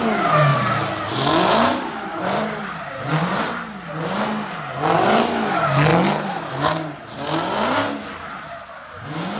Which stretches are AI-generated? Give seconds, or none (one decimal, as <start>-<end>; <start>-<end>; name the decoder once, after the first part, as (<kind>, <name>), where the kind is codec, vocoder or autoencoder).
none